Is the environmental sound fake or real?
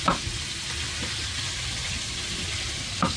real